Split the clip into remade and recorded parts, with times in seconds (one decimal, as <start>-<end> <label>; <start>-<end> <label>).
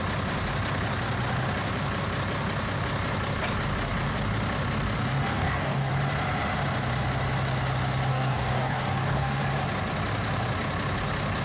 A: 0.0-5.3 recorded; 5.3-5.9 remade; 5.9-8.1 recorded; 8.1-9.4 remade; 9.4-11.4 recorded